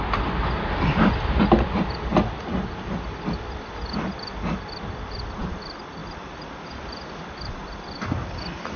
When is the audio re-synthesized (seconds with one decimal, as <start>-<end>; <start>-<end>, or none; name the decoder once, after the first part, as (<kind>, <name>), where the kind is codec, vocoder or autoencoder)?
6.0-8.8 (vocoder, BigVGAN v2)